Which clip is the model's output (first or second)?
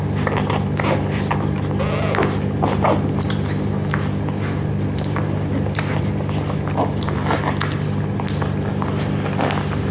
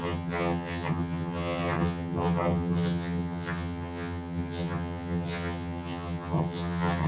second